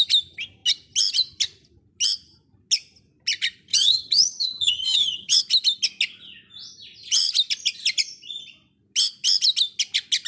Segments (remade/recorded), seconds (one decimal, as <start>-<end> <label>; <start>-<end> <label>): 0.0-3.7 recorded; 3.7-5.4 remade; 5.4-10.3 recorded